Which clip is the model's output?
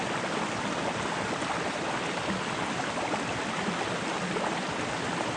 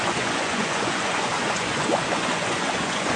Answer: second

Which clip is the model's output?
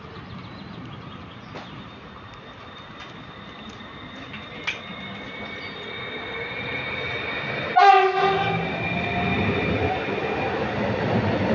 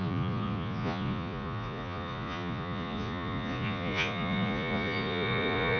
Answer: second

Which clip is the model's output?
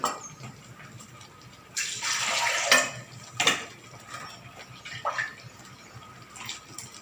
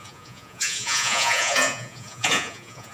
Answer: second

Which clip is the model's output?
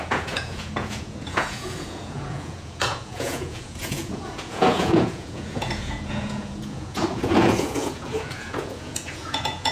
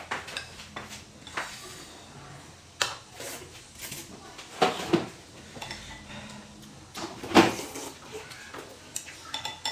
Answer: first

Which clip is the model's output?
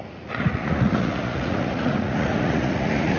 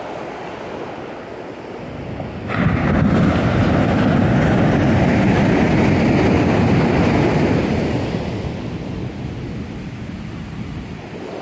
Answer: first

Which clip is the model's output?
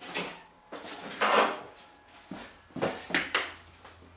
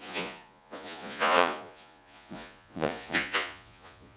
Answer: second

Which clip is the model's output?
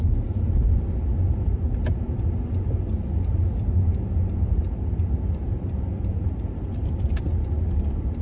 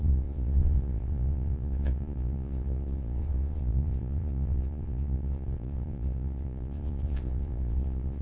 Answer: second